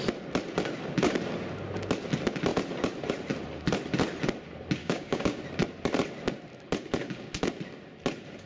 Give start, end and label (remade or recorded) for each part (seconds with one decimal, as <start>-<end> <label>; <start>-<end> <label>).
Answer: 0.0-4.8 recorded; 4.8-5.4 remade; 5.4-8.5 recorded